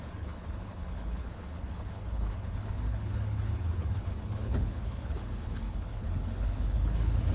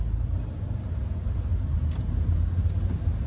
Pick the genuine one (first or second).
second